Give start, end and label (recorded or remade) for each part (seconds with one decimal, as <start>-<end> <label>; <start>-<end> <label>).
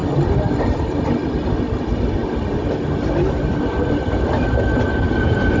0.0-1.6 recorded; 1.6-2.2 remade; 2.2-5.1 recorded; 5.1-5.6 remade